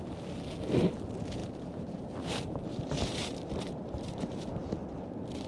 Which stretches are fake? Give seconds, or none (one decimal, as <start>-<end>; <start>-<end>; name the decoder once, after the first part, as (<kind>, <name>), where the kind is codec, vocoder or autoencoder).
1.4-4.7 (vocoder, BigVGAN v2)